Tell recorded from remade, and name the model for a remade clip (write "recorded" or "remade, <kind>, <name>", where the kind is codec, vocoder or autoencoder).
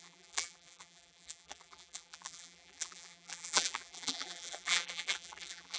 remade, vocoder, BigVGAN v2